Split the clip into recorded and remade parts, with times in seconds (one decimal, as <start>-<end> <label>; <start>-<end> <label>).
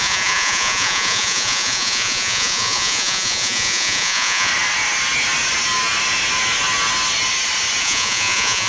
0.0-4.5 remade; 4.5-7.8 recorded; 7.8-8.7 remade